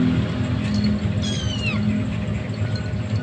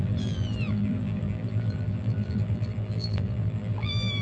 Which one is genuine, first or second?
first